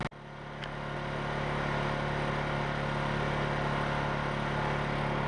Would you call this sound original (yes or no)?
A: yes